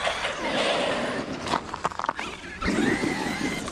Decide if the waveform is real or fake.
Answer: real